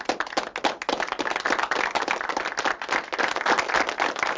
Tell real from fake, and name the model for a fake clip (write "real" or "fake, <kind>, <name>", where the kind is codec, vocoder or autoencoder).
real